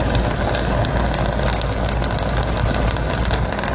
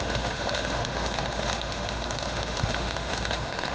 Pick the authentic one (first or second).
first